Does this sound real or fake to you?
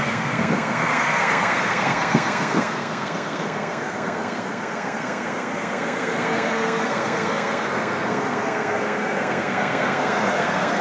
fake